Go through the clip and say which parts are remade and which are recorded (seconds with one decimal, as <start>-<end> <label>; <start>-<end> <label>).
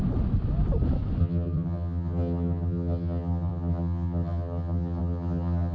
0.0-1.2 recorded; 1.2-5.7 remade